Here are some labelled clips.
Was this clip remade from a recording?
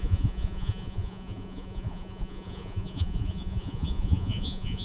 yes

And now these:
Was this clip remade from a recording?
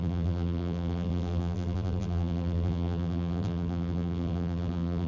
yes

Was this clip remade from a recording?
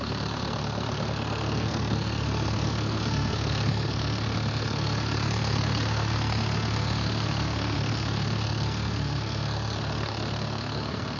yes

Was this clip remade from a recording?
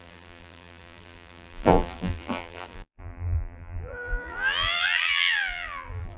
yes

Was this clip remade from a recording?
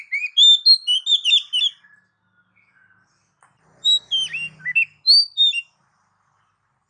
no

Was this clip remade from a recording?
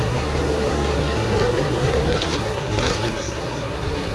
yes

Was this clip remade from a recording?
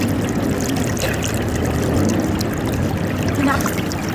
no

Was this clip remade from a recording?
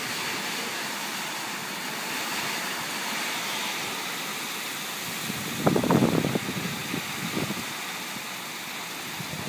no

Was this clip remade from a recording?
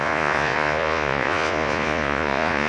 yes